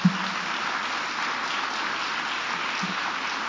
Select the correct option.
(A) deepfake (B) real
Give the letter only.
B